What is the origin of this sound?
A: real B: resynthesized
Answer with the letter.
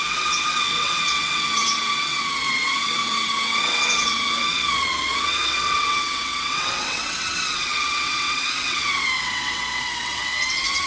B